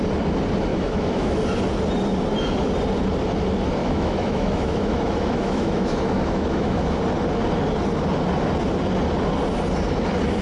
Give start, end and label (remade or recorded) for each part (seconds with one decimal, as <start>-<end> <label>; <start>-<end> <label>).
0.0-0.7 recorded; 0.7-1.4 remade; 1.4-3.8 recorded; 3.8-7.0 remade; 7.0-10.4 recorded